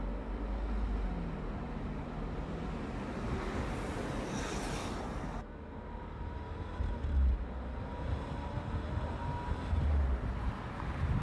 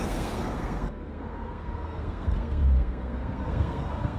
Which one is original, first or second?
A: first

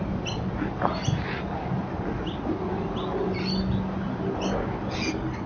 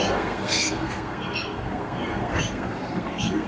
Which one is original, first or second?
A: first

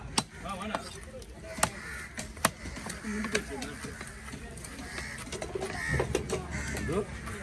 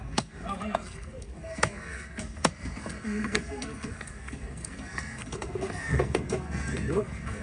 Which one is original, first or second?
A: first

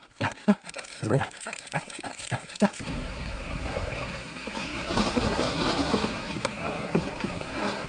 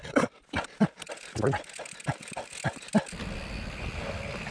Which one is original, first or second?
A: second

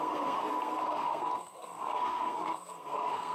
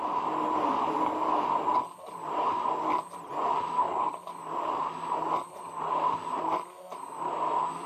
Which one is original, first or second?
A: second